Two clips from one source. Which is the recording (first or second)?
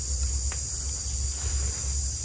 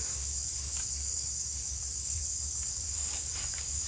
first